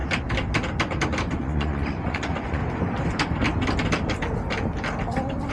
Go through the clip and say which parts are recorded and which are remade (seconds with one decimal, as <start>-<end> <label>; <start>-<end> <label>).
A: 0.0-1.3 recorded; 1.3-2.6 remade; 2.6-5.5 recorded